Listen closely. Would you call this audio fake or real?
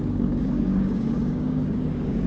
fake